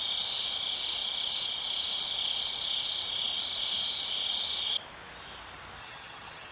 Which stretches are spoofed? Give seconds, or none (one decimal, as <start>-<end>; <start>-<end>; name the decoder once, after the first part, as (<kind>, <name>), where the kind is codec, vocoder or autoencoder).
5.8-6.5 (vocoder, HiFi-GAN)